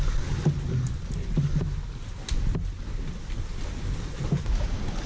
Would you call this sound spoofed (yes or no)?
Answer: no